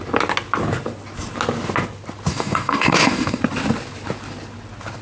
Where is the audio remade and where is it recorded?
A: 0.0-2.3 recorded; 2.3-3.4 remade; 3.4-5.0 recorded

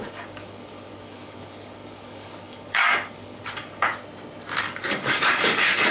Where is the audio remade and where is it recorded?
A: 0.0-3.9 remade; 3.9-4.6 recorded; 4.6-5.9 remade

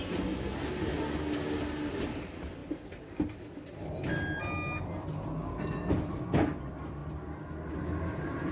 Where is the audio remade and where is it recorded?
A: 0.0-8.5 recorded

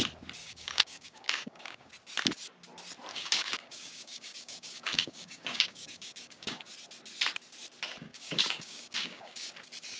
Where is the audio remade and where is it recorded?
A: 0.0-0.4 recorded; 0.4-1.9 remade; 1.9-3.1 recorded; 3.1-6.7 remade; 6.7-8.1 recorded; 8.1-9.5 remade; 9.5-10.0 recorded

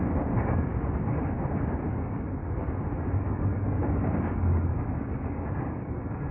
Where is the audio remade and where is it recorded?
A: 0.0-0.7 remade; 0.7-1.9 recorded; 1.9-2.4 remade; 2.4-3.1 recorded; 3.1-6.3 remade

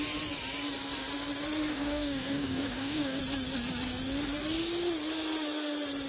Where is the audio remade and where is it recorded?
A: 0.0-1.7 recorded; 1.7-3.2 remade; 3.2-6.1 recorded

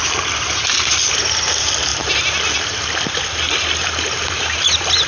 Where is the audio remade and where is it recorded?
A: 0.0-5.1 recorded